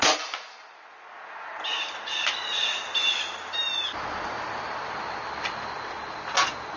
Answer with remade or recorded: recorded